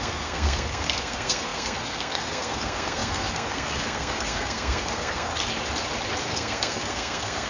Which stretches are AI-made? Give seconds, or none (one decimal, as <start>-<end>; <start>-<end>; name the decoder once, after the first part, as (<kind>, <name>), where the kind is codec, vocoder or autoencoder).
0.0-5.3 (codec, SNAC); 6.2-7.5